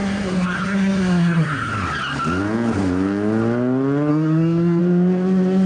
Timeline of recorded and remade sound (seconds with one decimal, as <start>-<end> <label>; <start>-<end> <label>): 0.0-1.7 remade; 1.7-4.1 recorded; 4.1-4.8 remade; 4.8-5.7 recorded